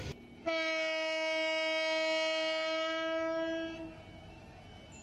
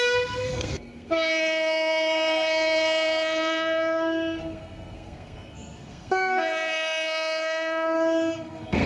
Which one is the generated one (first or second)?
second